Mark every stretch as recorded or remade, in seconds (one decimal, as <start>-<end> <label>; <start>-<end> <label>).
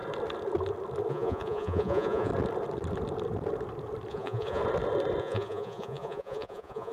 0.0-1.1 recorded; 1.1-2.3 remade; 2.3-4.1 recorded; 4.1-4.6 remade; 4.6-5.2 recorded; 5.2-6.9 remade